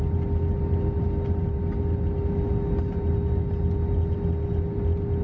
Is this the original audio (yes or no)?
yes